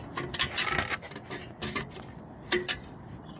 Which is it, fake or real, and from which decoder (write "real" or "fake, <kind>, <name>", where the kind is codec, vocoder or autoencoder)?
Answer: real